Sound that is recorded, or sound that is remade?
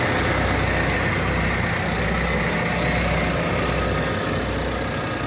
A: recorded